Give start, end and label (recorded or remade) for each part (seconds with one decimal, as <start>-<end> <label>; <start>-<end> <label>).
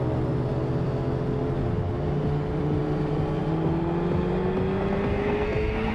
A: 0.0-5.1 recorded; 5.1-5.9 remade